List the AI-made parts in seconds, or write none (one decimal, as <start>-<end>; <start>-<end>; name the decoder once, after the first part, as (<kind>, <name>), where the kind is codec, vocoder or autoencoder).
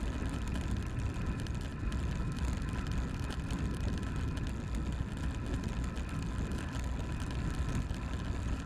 none